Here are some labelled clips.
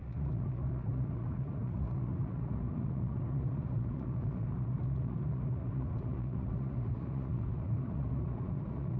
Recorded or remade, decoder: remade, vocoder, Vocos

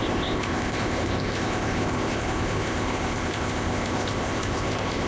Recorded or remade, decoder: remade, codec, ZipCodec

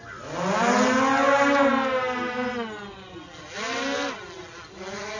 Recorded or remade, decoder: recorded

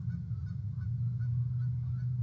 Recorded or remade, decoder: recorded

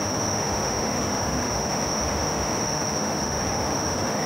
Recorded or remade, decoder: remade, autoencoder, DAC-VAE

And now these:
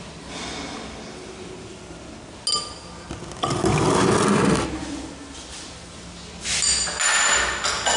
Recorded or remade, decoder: recorded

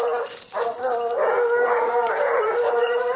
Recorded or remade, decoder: recorded